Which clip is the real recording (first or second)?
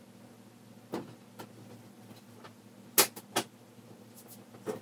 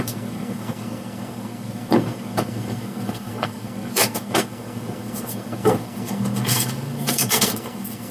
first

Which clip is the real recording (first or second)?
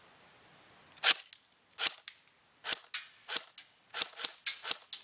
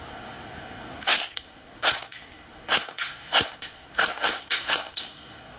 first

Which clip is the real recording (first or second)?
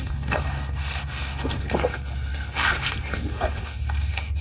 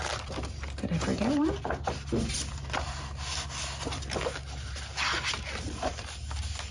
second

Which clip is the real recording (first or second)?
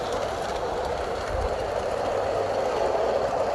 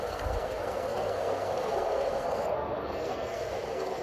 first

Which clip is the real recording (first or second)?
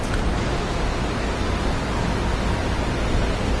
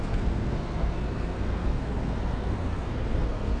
first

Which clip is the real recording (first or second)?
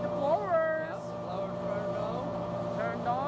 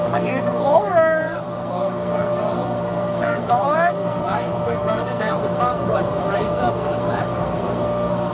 first